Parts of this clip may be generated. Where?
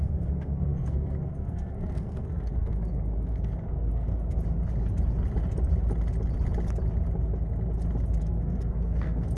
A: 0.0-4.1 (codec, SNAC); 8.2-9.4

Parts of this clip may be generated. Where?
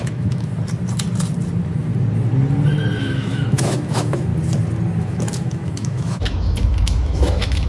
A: 0.0-0.5 (autoencoder, DAC-VAE); 3.0-4.3; 5.0-7.7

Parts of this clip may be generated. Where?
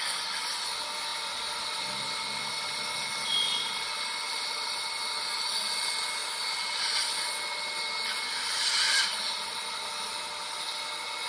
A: none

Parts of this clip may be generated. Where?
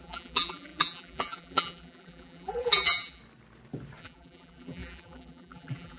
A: 0.0-3.2 (vocoder, BigVGAN v2); 4.0-6.0